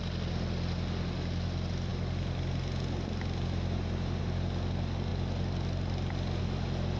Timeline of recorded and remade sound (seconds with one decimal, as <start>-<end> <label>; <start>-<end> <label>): 0.0-7.0 recorded